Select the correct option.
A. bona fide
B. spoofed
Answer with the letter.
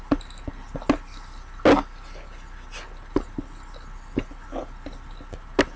A